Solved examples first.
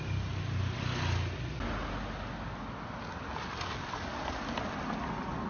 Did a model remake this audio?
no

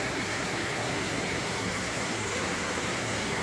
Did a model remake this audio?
yes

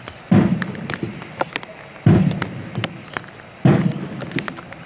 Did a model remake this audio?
no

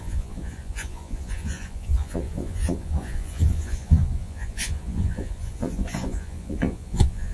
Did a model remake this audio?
yes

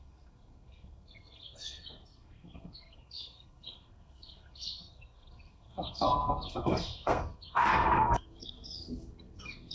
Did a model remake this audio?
yes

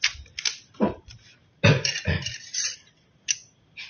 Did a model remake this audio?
no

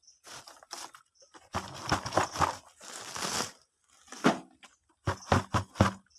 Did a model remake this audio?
no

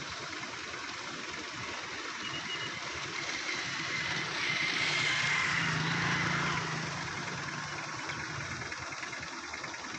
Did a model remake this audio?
no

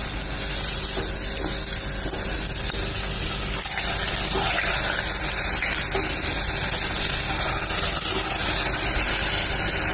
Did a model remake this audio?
no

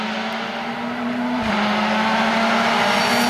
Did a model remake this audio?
no